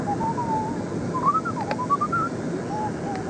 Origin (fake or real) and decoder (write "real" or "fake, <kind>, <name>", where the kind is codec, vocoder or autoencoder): real